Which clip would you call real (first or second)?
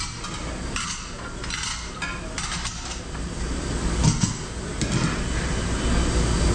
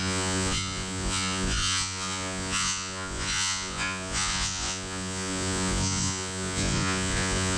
first